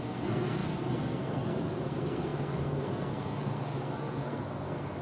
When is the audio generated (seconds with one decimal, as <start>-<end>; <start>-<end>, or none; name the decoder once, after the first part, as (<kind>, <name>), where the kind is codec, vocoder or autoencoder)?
0.0-5.0 (codec, SNAC)